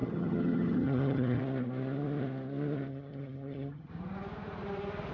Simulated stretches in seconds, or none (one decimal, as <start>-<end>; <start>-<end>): 0.0-1.4; 2.9-3.9